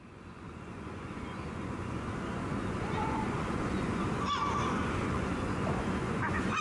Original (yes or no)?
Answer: no